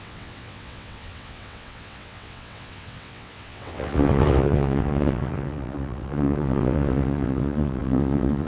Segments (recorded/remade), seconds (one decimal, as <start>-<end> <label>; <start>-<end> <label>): 0.0-8.5 remade